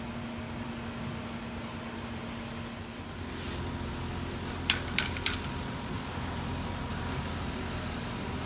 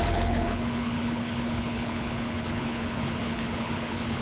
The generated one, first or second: second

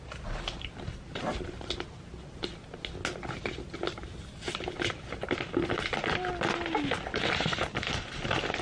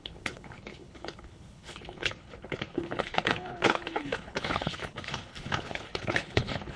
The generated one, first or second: second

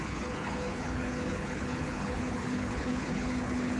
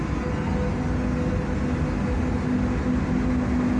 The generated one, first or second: first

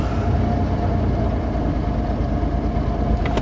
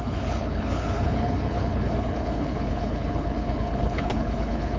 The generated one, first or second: second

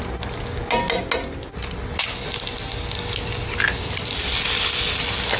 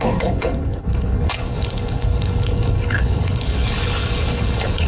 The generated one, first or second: second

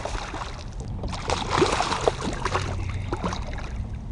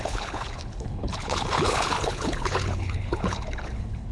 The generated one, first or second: second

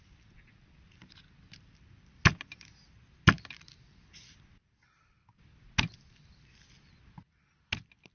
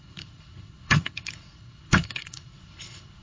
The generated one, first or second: second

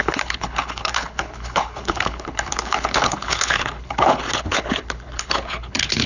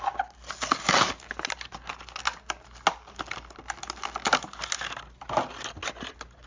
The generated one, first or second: first